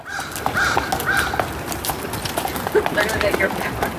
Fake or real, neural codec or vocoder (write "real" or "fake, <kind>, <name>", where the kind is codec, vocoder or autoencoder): real